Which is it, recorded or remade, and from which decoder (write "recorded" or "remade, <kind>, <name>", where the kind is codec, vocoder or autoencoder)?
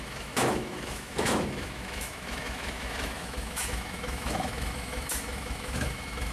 remade, autoencoder, DAC-VAE